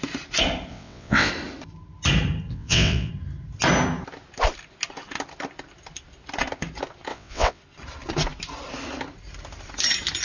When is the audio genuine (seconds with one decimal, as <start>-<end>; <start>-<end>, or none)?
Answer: 0.0-0.7; 1.3-2.5; 3.1-7.1; 7.6-10.2